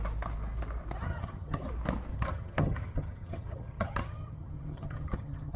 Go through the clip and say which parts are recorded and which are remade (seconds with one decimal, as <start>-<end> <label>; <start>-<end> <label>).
0.0-1.0 recorded; 1.0-1.7 remade; 1.7-2.1 recorded; 2.1-5.6 remade